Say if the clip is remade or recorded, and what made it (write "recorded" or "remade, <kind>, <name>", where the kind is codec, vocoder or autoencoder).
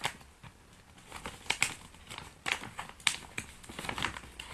recorded